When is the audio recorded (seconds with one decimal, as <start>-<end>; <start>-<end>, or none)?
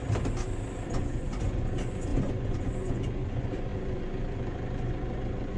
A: 0.0-0.9